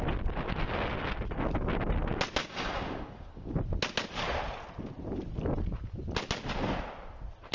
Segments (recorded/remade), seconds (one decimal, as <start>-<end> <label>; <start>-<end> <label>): 0.0-2.4 recorded; 2.4-3.5 remade; 3.5-7.5 recorded